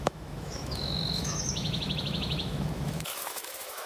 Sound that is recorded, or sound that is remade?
remade